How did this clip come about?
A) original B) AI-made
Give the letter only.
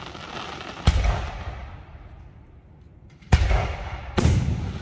A